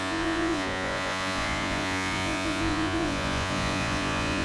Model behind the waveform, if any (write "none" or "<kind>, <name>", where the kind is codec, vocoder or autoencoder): vocoder, Vocos